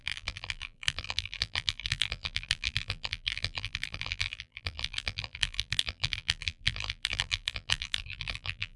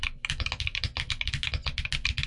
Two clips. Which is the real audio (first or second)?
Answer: second